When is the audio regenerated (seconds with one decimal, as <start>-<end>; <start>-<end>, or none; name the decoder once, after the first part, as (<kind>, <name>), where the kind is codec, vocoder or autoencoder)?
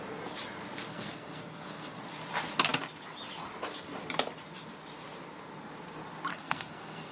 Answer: 0.9-2.0 (codec, SNAC); 6.3-7.1